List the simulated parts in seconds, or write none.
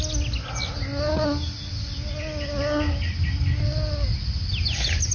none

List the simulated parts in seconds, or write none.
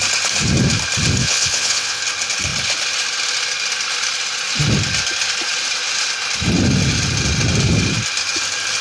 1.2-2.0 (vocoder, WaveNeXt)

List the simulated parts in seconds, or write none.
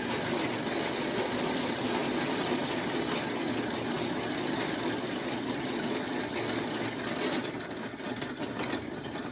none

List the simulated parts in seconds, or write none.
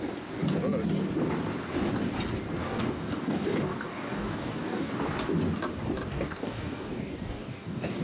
2.6-4.9 (codec, DAC); 6.1-8.0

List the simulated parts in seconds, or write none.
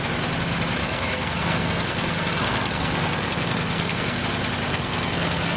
0.8-4.2 (codec, SNAC); 4.7-5.6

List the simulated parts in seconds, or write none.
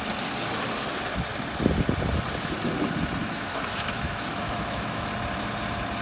3.2-5.1 (autoencoder, DAC-VAE)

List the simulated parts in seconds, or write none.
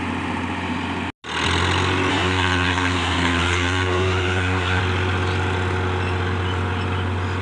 2.1-4.8 (codec, SNAC)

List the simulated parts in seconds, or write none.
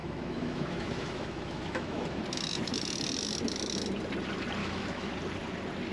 0.0-2.2 (autoencoder, DAC-VAE); 4.6-5.1